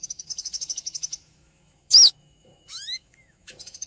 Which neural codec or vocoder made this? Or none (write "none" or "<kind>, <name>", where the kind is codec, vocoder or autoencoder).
autoencoder, DAC-VAE